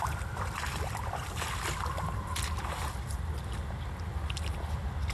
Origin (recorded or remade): recorded